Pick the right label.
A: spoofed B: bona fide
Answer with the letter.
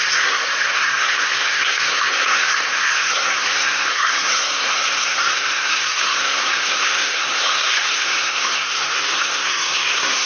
A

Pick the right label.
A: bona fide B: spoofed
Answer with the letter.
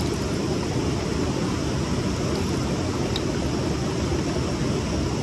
A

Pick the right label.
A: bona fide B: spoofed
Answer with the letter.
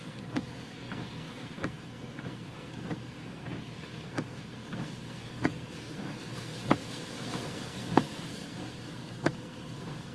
B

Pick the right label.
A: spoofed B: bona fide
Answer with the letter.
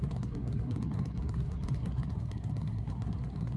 A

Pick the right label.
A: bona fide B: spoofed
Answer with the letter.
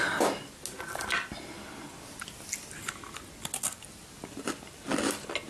A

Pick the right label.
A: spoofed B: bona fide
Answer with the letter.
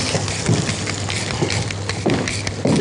B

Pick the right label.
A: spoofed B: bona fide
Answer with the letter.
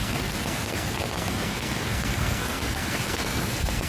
A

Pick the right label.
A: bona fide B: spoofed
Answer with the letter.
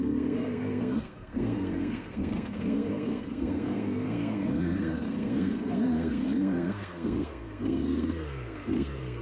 B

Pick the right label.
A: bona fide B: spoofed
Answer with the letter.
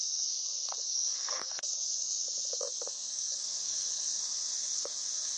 B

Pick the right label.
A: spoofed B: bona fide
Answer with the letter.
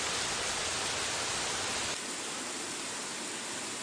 B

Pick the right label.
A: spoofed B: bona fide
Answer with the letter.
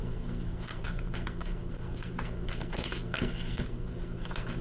A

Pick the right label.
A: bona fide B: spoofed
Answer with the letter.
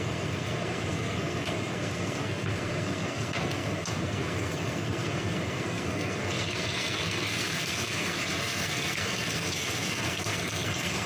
B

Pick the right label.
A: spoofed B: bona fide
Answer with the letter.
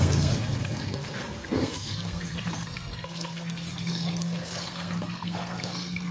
A